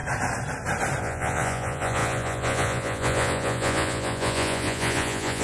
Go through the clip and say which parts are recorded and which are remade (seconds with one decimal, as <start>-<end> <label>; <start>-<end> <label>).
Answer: 0.0-1.0 recorded; 1.0-5.4 remade